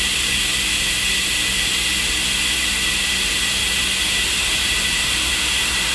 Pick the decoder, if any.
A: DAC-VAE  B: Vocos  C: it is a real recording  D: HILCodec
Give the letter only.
C